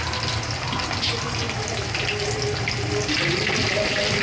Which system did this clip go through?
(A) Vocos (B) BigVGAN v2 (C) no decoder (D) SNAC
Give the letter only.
C